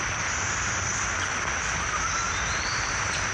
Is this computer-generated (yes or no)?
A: no